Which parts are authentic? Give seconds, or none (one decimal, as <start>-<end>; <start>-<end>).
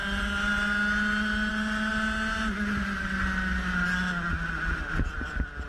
0.0-5.7